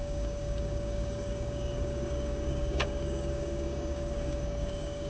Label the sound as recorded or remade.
remade